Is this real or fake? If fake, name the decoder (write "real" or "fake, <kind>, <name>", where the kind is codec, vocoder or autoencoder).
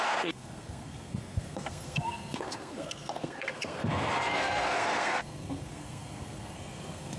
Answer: fake, codec, SNAC